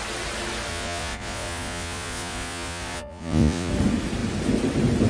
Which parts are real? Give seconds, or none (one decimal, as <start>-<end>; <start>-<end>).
0.0-0.7; 3.7-5.1